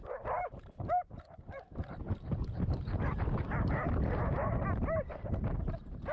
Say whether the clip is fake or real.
real